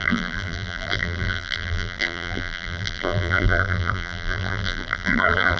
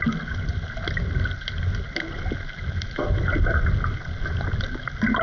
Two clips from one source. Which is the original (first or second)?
second